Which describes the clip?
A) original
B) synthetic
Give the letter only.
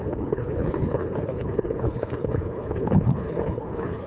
B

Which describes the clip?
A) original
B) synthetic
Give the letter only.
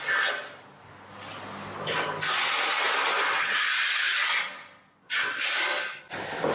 A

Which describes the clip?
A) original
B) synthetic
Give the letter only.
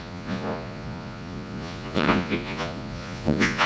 B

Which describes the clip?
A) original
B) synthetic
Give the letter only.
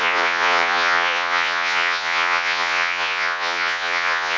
B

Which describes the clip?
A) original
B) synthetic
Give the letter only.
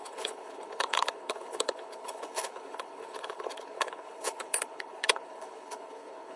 B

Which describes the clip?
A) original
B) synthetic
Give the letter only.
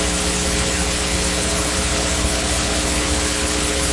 B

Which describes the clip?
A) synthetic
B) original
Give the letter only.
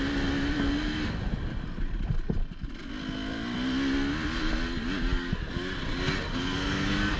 B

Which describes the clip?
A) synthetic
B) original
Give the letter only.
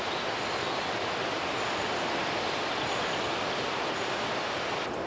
B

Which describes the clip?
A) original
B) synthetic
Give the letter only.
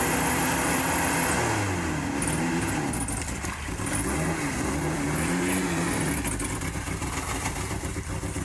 A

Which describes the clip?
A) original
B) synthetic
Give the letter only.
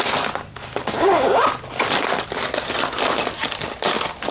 A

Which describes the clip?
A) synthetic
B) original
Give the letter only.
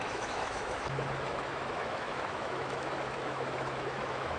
A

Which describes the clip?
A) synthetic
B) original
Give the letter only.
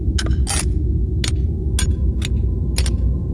B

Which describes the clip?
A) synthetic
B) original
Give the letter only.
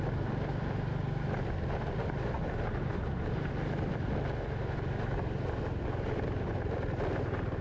B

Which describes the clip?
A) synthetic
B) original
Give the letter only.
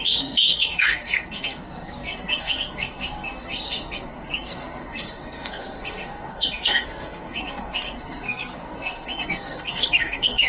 A